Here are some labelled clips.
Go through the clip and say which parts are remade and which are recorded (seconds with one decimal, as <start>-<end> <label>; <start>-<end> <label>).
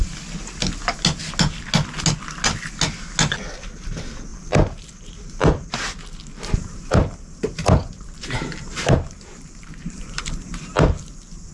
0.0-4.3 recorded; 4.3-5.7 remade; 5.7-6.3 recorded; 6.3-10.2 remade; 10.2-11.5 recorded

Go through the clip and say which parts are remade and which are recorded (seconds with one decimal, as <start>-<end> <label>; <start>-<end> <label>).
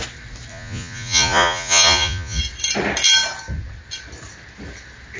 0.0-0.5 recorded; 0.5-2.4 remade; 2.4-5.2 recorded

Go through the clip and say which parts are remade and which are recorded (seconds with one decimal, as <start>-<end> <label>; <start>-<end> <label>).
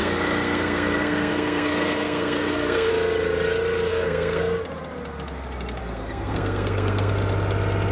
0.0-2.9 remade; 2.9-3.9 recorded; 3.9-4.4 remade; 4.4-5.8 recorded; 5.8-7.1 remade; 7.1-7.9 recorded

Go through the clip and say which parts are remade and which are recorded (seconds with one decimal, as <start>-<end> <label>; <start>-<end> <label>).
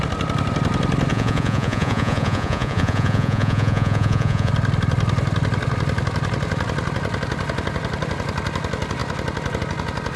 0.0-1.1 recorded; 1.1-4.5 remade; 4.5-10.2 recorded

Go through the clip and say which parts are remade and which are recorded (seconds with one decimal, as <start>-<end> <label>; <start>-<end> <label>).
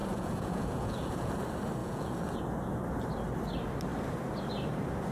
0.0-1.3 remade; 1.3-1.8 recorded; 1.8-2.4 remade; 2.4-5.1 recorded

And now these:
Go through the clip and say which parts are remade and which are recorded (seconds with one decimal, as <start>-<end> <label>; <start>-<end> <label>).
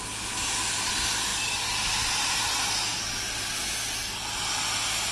0.0-5.1 recorded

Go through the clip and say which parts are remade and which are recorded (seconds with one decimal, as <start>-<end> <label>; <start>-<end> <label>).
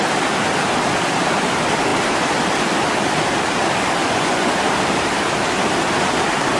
0.0-4.0 recorded; 4.0-4.5 remade; 4.5-6.6 recorded